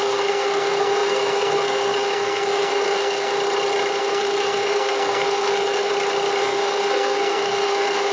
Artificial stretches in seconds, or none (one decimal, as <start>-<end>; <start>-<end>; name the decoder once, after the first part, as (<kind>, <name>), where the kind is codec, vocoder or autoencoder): 0.0-3.3 (codec, SNAC); 4.0-5.9; 6.4-8.1